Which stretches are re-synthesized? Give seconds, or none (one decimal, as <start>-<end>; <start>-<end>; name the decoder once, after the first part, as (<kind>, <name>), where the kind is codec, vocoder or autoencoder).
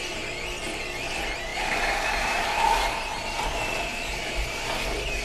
1.5-4.3 (vocoder, BigVGAN v2)